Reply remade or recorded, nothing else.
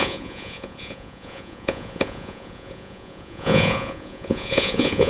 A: remade